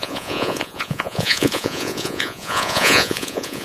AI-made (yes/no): yes